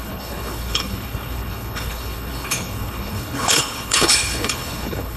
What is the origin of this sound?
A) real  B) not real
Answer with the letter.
B